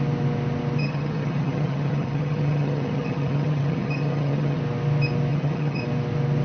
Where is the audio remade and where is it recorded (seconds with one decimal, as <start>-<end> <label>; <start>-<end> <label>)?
0.0-0.8 recorded; 0.8-4.6 remade; 4.6-5.3 recorded; 5.3-5.8 remade; 5.8-6.4 recorded